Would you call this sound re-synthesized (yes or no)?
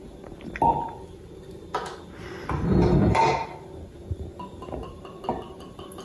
no